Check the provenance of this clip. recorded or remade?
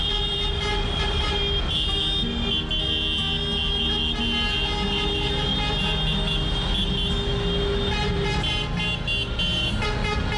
recorded